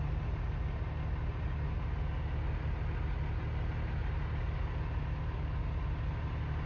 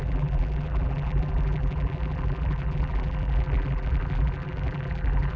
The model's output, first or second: second